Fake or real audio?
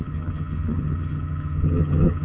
fake